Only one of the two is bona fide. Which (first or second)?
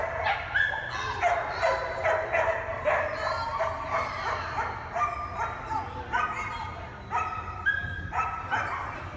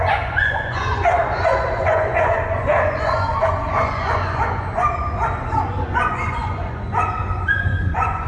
first